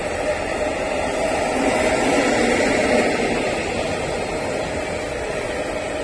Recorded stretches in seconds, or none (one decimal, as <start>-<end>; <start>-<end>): 0.0-6.0

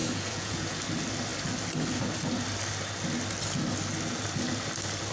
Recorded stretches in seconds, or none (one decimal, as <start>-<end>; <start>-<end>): 0.8-5.1

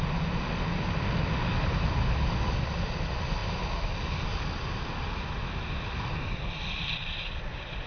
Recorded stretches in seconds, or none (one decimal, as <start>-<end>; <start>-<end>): 0.0-7.9